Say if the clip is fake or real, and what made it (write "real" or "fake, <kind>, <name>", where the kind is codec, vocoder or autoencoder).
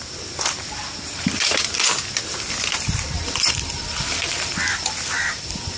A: fake, vocoder, BigVGAN v2